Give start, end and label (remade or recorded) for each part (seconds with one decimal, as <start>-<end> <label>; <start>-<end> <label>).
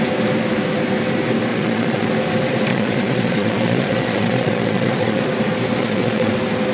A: 0.0-1.5 recorded; 1.5-2.1 remade; 2.1-2.7 recorded; 2.7-5.2 remade; 5.2-5.8 recorded; 5.8-6.3 remade; 6.3-6.7 recorded